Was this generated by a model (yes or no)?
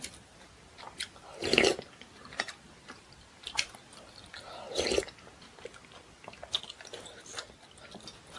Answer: no